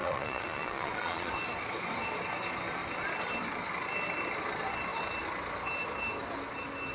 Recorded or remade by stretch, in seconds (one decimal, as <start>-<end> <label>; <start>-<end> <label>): 0.0-1.3 remade; 1.3-6.9 recorded